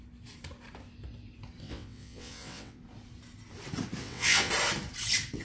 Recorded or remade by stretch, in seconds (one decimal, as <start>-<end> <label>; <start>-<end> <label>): 0.0-1.6 recorded; 1.6-2.8 remade; 2.8-4.0 recorded; 4.0-4.5 remade; 4.5-5.4 recorded